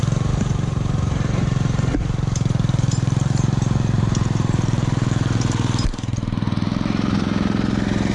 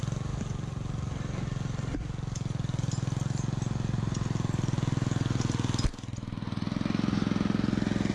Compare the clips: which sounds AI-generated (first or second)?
first